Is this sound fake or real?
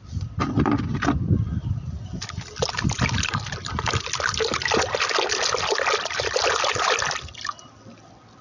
real